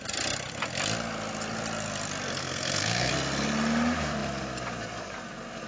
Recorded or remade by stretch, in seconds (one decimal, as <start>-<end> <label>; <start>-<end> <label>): 0.0-2.4 recorded; 2.4-3.1 remade; 3.1-5.7 recorded

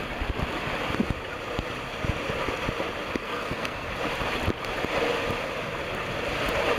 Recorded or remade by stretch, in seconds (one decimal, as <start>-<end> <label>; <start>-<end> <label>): 0.0-3.2 recorded; 3.2-3.9 remade; 3.9-6.8 recorded

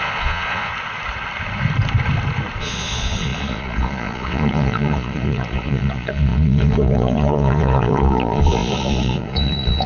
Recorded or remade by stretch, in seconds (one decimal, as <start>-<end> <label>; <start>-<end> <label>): 0.0-0.7 remade; 0.7-2.6 recorded; 2.6-9.9 remade

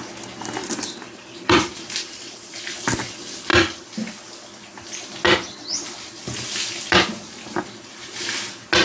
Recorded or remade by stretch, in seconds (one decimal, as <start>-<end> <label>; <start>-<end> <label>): 0.0-0.6 recorded; 0.6-2.6 remade; 2.6-8.8 recorded